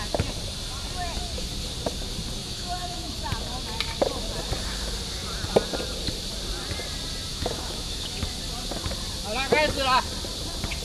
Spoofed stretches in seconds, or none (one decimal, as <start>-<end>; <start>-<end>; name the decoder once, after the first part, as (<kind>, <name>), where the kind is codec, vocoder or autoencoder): 2.4-3.1 (autoencoder, DAC-VAE); 7.3-8.2